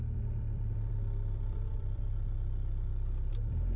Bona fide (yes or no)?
no